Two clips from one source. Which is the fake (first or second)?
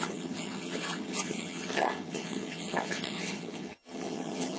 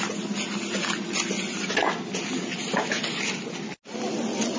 first